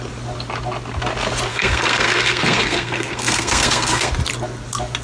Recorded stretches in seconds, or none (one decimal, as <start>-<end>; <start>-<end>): 0.0-1.5; 4.1-5.0